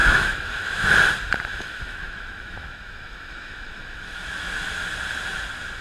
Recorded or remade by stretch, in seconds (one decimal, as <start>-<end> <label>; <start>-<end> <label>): 0.0-0.9 remade; 0.9-1.5 recorded; 1.5-4.5 remade; 4.5-5.8 recorded